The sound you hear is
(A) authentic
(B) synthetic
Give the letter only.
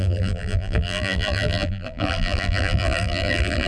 B